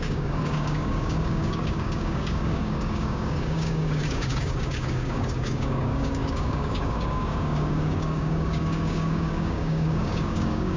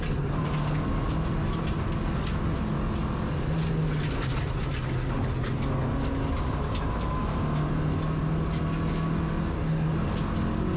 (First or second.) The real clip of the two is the second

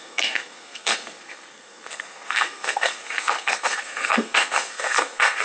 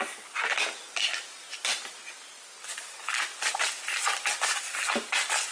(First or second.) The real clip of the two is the second